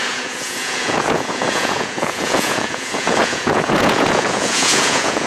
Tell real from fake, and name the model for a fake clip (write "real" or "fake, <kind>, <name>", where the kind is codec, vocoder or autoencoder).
fake, vocoder, Vocos